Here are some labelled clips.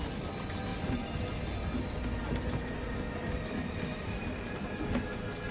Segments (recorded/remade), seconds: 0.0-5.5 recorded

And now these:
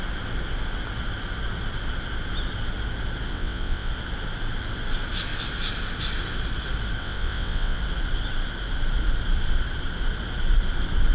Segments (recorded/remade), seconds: 0.0-3.3 recorded; 3.3-3.9 remade; 3.9-7.0 recorded; 7.0-7.8 remade; 7.8-11.1 recorded

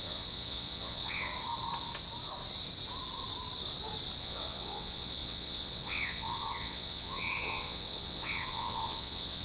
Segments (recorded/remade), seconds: 0.0-1.3 remade; 1.3-4.2 recorded; 4.2-9.4 remade